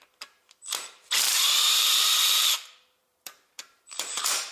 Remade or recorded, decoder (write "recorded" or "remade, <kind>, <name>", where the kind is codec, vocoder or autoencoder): remade, vocoder, BigVGAN v2